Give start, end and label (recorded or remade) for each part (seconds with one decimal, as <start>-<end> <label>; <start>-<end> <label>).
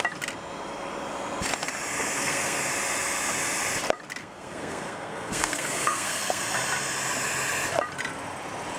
0.0-1.9 recorded; 1.9-2.7 remade; 2.7-4.2 recorded; 4.2-6.4 remade; 6.4-8.8 recorded